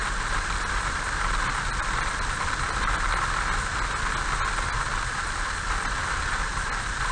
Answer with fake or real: real